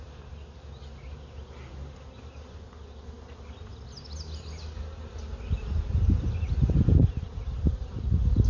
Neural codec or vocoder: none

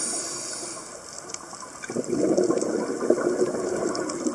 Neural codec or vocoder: none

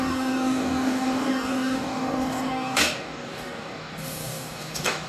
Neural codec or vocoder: codec, DAC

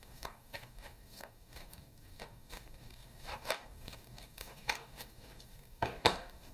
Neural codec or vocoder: codec, DAC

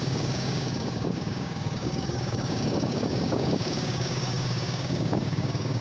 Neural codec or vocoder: codec, DAC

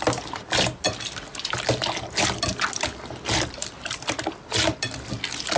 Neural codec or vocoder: none